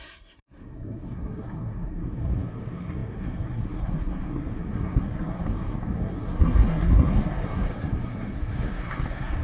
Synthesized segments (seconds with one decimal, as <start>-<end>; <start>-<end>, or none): 0.0-9.4